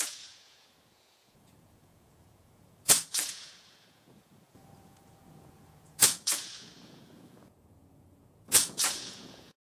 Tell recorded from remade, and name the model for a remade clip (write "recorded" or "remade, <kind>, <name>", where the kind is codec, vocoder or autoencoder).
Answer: remade, vocoder, Vocos